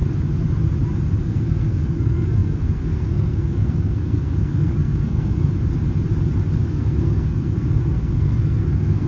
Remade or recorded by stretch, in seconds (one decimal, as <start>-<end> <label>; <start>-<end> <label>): 0.0-1.2 recorded; 1.2-5.5 remade; 5.5-6.7 recorded; 6.7-9.1 remade